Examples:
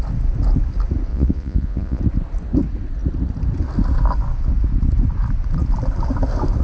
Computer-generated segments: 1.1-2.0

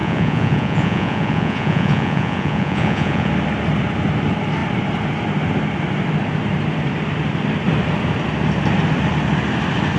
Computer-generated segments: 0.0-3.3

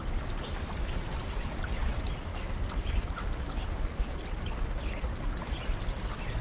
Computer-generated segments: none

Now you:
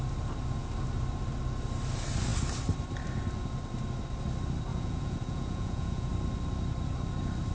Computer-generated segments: 4.7-6.1

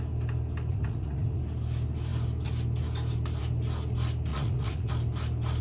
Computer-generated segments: 0.7-1.4; 4.3-4.9